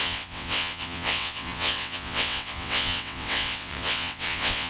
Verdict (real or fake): fake